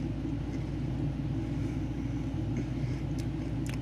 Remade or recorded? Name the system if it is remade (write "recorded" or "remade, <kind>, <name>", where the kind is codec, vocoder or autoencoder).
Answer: recorded